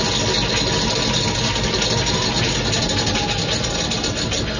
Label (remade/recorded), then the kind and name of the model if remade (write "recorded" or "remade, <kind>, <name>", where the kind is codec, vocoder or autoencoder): recorded